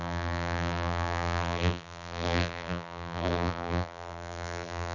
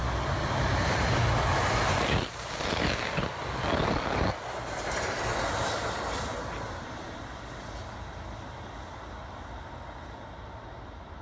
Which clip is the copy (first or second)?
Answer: first